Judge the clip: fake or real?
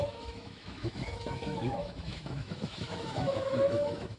fake